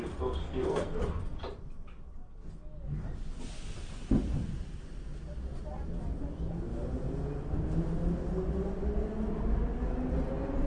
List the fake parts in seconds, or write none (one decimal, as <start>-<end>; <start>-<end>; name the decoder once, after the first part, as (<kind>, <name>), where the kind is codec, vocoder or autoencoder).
0.4-1.0 (codec, SNAC)